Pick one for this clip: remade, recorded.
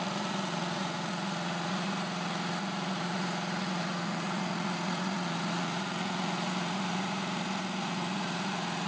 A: remade